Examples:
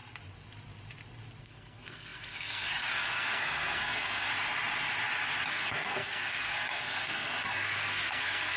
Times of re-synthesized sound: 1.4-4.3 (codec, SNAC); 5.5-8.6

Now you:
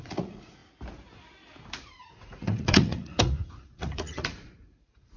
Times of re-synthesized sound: 0.0-0.6 (vocoder, Vocos); 1.9-5.2